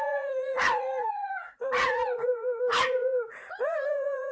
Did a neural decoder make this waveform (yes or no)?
yes